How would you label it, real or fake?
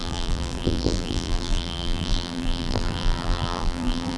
fake